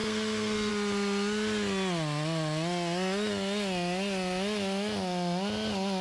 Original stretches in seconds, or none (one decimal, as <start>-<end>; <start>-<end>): 0.7-6.0